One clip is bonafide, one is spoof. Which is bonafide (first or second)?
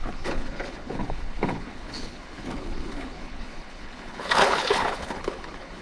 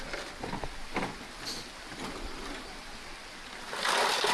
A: second